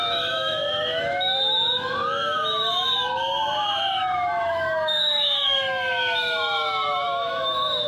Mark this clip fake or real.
fake